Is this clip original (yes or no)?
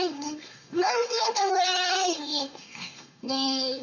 no